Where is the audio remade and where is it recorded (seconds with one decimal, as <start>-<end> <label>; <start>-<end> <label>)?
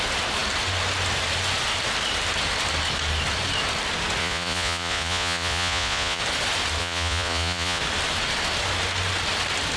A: 0.0-4.2 recorded; 4.2-6.2 remade; 6.2-6.8 recorded; 6.8-7.8 remade; 7.8-9.8 recorded